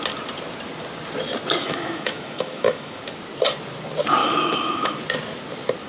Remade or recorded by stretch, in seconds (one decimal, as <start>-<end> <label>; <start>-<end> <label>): 0.0-1.6 recorded; 1.6-3.0 remade; 3.0-4.2 recorded; 4.2-5.0 remade; 5.0-5.9 recorded